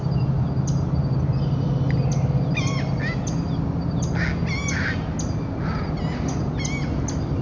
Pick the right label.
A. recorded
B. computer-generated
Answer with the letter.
A